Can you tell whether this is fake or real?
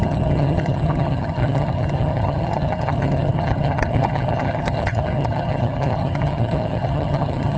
fake